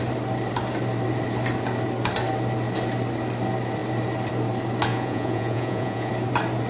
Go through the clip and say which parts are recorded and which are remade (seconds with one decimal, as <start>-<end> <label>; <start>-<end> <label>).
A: 0.0-4.9 recorded; 4.9-6.1 remade; 6.1-6.7 recorded